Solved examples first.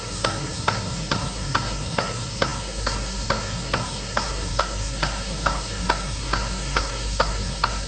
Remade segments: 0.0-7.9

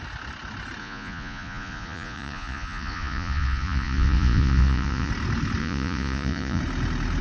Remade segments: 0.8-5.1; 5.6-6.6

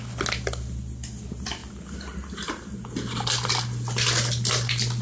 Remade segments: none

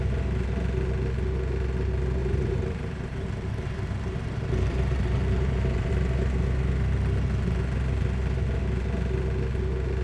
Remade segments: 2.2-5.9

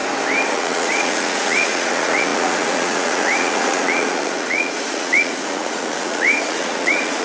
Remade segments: 0.5-7.2

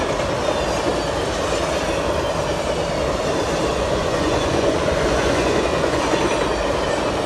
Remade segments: 3.7-6.2

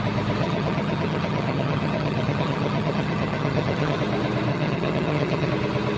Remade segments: 0.4-4.0; 4.5-5.5